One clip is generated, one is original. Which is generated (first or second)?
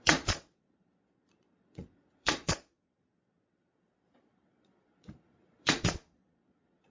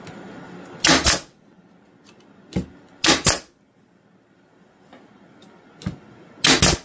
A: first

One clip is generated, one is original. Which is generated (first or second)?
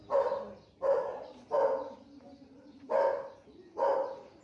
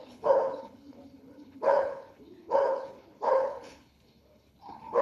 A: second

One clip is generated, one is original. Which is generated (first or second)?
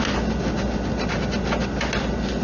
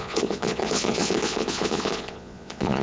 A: second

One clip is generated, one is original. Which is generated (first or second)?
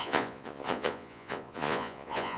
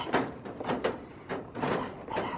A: first